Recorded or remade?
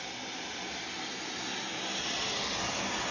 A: recorded